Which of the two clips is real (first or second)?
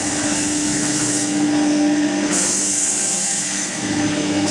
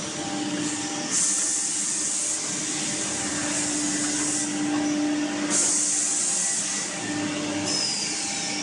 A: second